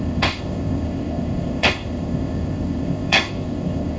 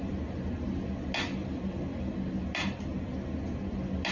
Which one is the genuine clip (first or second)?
second